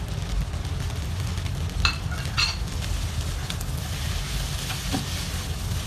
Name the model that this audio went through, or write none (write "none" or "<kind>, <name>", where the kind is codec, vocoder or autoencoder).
none